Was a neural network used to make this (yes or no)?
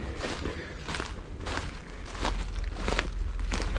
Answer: no